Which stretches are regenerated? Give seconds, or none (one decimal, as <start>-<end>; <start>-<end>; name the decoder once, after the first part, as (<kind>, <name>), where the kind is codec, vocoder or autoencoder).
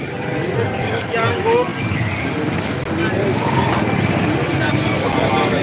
none